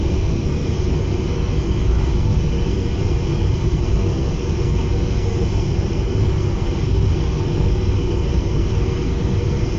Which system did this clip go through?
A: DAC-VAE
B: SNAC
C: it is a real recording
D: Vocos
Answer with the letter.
B